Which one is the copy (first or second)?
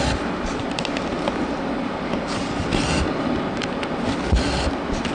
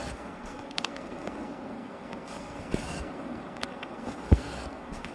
second